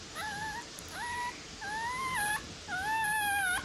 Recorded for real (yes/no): yes